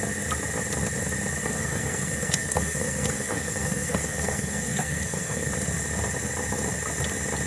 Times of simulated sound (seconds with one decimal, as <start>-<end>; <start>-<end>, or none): 1.4-5.5